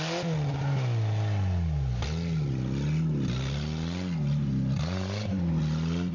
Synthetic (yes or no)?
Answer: no